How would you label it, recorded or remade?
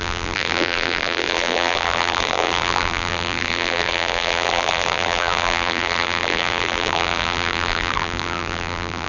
remade